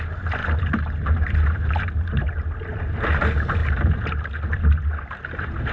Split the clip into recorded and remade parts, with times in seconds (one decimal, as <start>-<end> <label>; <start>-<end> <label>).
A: 0.0-2.7 recorded; 2.7-3.2 remade; 3.2-3.6 recorded; 3.6-4.4 remade; 4.4-5.7 recorded